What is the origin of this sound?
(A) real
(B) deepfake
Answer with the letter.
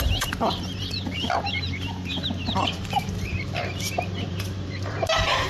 B